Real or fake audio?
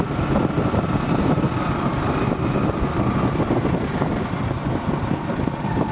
real